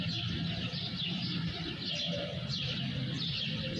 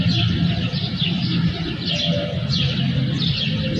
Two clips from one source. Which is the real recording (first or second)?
second